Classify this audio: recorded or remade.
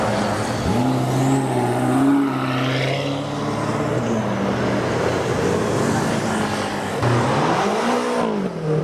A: recorded